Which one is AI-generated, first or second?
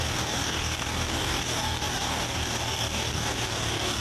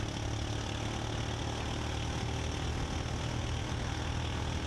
first